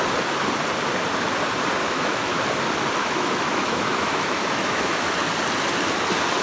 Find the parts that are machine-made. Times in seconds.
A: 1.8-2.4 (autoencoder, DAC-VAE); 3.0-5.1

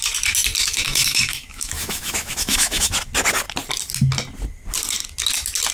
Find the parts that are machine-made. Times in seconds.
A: 0.6-2.9 (autoencoder, DAC-VAE)

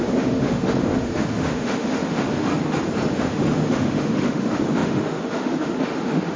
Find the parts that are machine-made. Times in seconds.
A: 0.0-2.5 (autoencoder, DAC-VAE); 3.1-6.4

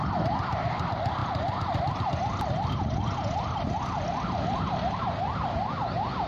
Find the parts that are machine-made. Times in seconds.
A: none